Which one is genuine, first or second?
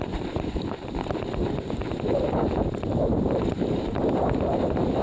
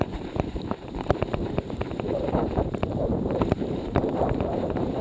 first